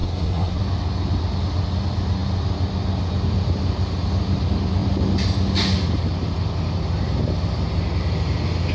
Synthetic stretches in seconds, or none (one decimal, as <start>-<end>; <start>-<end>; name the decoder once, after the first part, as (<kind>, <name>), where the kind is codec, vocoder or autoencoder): 0.0-0.6 (codec, SNAC)